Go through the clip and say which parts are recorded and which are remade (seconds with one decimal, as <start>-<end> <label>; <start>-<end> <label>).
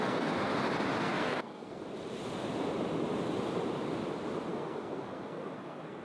0.0-0.5 remade; 0.5-1.0 recorded; 1.0-1.8 remade; 1.8-4.5 recorded; 4.5-6.0 remade